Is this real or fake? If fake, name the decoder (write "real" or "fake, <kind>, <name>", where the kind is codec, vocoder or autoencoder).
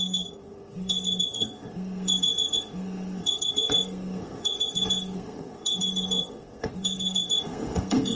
fake, codec, SNAC